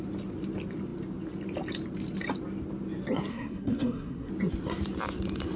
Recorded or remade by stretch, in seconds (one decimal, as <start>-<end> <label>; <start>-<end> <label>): 0.0-3.3 recorded; 3.3-4.3 remade; 4.3-5.6 recorded